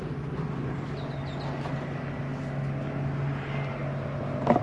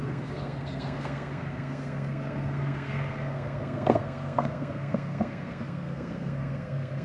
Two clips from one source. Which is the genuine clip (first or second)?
first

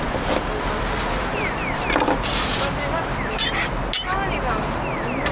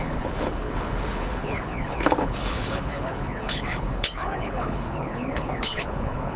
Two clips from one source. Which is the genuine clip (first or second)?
first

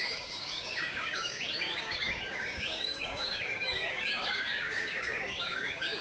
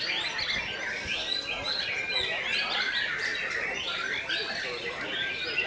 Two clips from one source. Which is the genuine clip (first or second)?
second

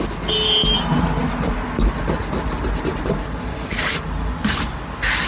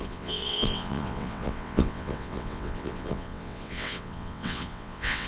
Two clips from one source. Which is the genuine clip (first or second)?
first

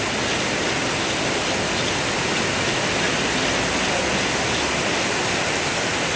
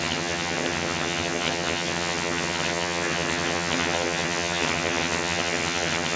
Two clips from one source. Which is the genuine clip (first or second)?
first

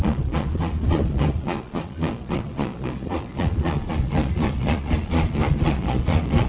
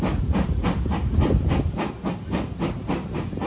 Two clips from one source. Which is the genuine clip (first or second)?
second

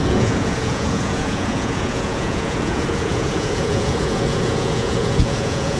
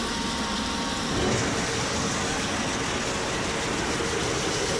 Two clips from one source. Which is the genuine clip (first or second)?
second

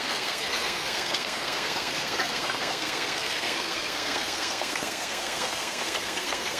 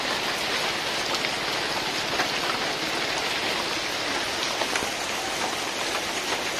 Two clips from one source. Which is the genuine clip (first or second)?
second